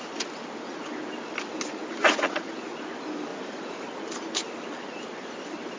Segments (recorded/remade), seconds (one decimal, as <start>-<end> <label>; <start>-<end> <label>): 0.0-2.0 recorded; 2.0-2.5 remade; 2.5-3.3 recorded; 3.3-3.8 remade; 3.8-5.8 recorded